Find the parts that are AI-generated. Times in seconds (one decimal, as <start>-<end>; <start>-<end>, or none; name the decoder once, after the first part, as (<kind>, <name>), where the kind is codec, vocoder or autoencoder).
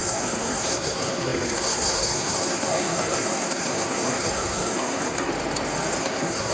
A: 0.0-5.3 (codec, SNAC); 6.0-6.5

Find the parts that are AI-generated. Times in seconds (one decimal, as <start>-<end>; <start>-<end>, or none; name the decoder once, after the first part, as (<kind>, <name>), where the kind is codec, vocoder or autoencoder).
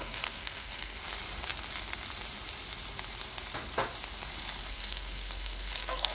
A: 0.0-1.0 (codec, SNAC); 4.7-6.1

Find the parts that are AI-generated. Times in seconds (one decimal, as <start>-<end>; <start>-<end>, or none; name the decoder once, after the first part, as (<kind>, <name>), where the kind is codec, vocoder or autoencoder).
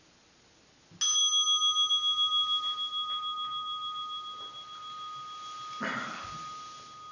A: none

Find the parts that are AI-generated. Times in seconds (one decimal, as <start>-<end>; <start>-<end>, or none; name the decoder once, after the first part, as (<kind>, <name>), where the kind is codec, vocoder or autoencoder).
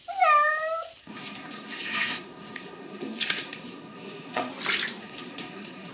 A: 1.0-4.5 (codec, SNAC); 5.0-5.9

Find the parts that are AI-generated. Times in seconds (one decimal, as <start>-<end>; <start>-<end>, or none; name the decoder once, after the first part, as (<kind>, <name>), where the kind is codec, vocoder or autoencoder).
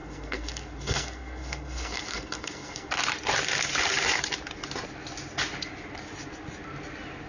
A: 0.0-2.9 (codec, SNAC)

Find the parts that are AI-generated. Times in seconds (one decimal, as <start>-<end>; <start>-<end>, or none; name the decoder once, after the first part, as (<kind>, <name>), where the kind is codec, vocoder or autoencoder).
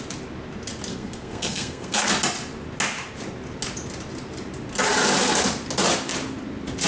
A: 0.9-2.1 (codec, SNAC)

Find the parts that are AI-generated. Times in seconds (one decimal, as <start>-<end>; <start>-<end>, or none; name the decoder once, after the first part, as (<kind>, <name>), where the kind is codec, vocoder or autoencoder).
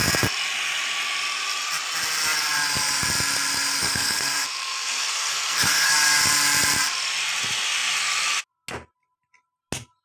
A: 3.8-5.9 (codec, SNAC)